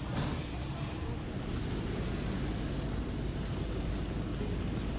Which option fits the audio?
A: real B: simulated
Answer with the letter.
A